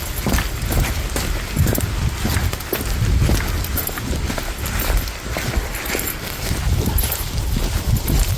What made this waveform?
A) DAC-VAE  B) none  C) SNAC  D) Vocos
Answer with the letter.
B